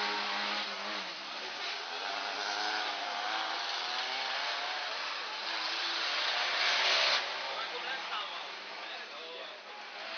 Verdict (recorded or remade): recorded